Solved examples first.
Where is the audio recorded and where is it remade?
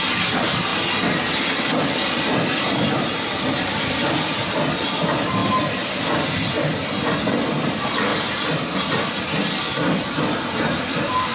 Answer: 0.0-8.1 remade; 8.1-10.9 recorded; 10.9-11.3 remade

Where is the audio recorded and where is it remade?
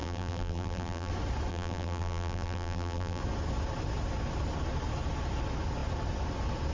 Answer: 0.0-1.1 remade; 1.1-1.5 recorded; 1.5-3.2 remade; 3.2-6.7 recorded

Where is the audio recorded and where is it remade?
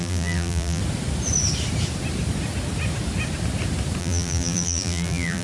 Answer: 0.0-0.8 remade; 0.8-4.0 recorded; 4.0-5.4 remade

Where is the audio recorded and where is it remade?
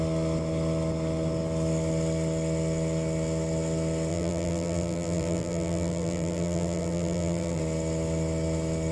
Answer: 0.0-4.1 recorded; 4.1-7.6 remade; 7.6-8.9 recorded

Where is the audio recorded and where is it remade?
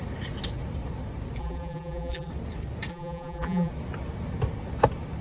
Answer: 0.0-1.4 recorded; 1.4-2.3 remade; 2.3-2.9 recorded; 2.9-3.7 remade; 3.7-5.2 recorded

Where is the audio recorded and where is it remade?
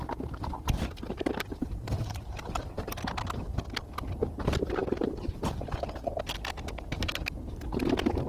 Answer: 0.0-1.6 recorded; 1.6-2.9 remade; 2.9-8.3 recorded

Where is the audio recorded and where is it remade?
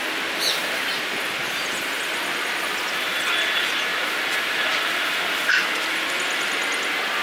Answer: 0.0-0.6 recorded; 0.6-1.9 remade; 1.9-3.9 recorded; 3.9-4.8 remade; 4.8-7.2 recorded